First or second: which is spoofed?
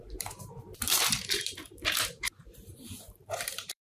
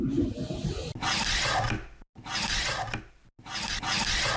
first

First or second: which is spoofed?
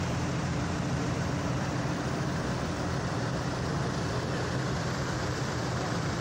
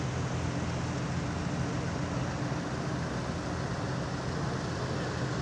first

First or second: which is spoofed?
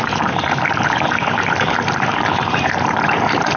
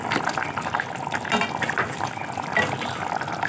first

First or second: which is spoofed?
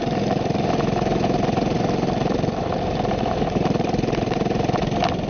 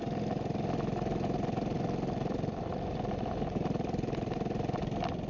first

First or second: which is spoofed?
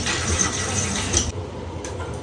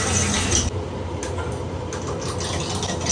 first